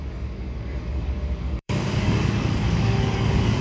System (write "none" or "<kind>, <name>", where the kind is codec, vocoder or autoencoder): codec, DAC